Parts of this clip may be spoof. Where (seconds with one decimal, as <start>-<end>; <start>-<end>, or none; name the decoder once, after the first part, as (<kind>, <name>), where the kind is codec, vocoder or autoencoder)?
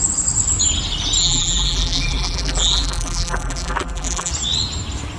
1.2-4.3 (vocoder, BigVGAN v2)